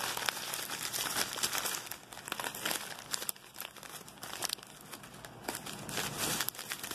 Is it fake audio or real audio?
real